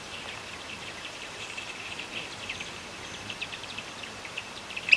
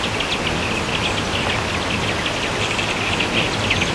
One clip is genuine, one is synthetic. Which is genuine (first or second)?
second